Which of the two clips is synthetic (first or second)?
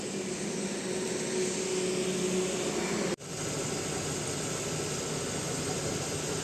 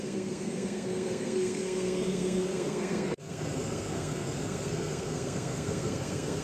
second